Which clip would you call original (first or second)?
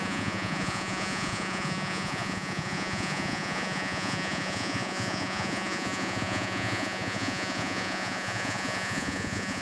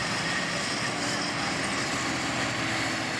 second